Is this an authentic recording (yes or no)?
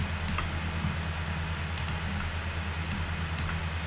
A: yes